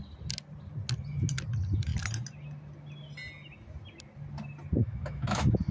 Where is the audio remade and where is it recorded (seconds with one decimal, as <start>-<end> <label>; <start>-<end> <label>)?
0.0-4.8 recorded; 4.8-5.7 remade